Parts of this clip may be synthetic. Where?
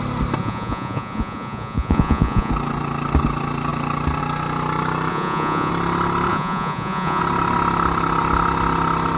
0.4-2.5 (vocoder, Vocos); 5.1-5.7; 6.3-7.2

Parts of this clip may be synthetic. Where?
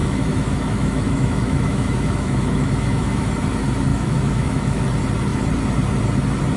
0.0-3.3 (autoencoder, DAC-VAE); 3.9-4.8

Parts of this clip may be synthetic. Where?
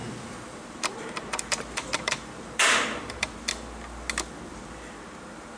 0.0-3.4 (vocoder, BigVGAN v2); 4.5-5.6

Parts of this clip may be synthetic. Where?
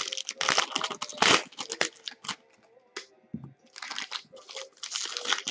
none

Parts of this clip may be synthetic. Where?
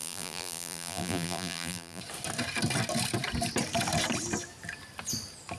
0.0-2.0 (vocoder, BigVGAN v2)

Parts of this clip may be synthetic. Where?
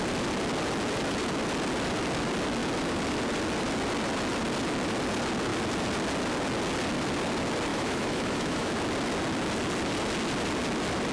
7.7-8.7 (autoencoder, DAC-VAE)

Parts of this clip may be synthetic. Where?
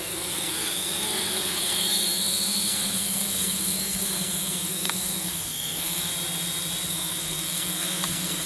0.0-6.1 (codec, SNAC); 6.9-8.5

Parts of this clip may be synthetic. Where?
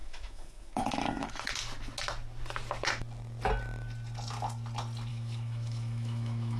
0.0-1.5 (autoencoder, DAC-VAE); 5.1-6.6